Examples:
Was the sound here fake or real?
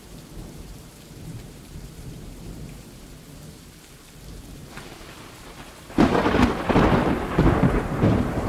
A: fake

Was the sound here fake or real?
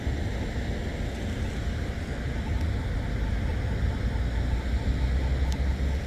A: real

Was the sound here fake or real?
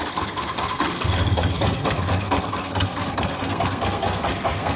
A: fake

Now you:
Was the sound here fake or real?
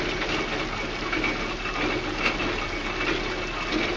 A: real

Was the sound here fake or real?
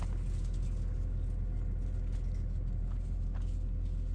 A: real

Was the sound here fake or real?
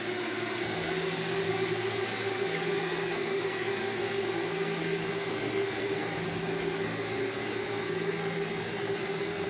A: fake